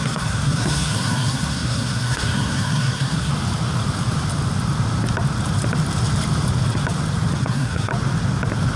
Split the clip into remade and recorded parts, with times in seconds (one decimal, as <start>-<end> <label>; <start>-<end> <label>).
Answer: 0.0-3.3 remade; 3.3-7.4 recorded; 7.4-7.9 remade; 7.9-8.8 recorded